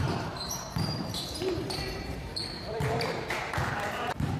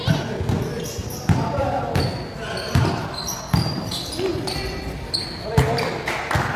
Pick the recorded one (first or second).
second